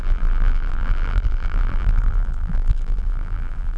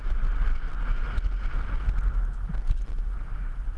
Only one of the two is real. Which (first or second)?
second